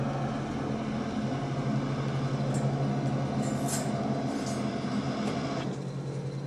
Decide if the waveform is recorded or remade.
recorded